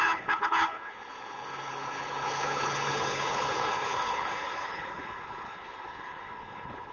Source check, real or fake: fake